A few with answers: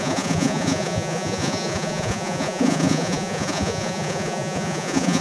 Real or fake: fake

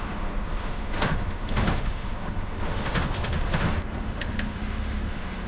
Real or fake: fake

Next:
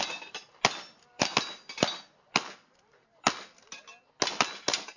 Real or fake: real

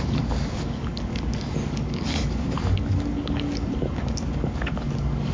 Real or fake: fake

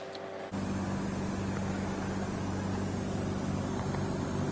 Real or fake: real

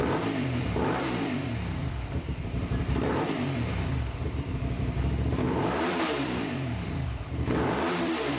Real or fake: fake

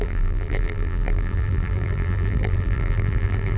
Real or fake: fake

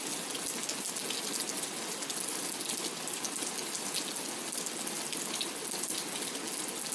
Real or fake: real